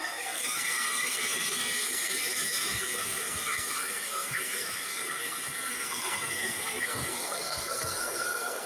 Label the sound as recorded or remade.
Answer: remade